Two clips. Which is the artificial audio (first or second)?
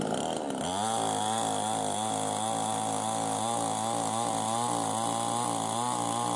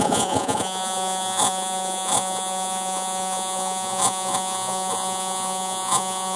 second